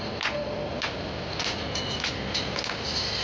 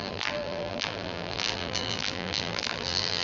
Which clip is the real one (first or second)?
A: first